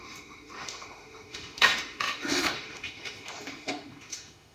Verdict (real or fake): fake